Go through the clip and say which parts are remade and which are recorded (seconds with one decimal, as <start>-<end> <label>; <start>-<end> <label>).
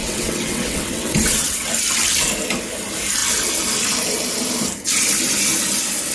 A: 0.0-1.7 remade; 1.7-6.1 recorded